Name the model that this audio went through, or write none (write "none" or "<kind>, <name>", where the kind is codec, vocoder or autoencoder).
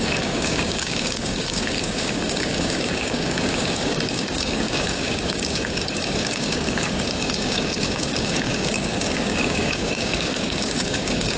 codec, DAC